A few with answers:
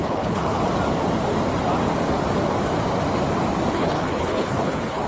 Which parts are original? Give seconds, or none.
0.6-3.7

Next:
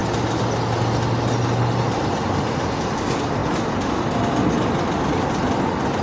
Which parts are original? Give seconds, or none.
0.0-6.0

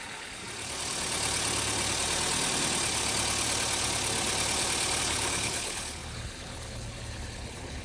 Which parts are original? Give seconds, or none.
0.4-5.0

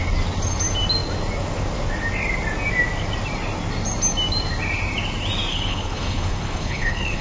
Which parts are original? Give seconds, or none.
0.0-5.5

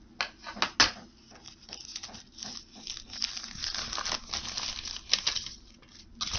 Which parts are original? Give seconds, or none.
0.0-6.4